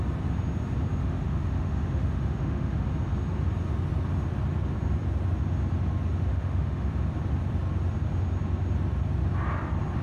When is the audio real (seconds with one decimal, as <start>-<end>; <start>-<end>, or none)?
0.0-1.0; 2.8-6.3; 6.9-10.0